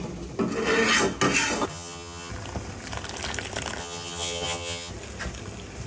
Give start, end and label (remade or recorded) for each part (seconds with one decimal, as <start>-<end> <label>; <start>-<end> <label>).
0.0-1.7 recorded; 1.7-2.3 remade; 2.3-3.8 recorded; 3.8-4.9 remade; 4.9-5.9 recorded